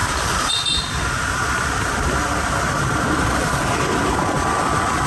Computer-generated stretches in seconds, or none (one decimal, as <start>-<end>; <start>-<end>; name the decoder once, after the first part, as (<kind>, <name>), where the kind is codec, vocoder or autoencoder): 0.0-0.5 (vocoder, BigVGAN v2); 2.8-3.6